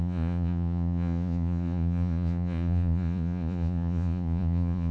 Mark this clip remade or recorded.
remade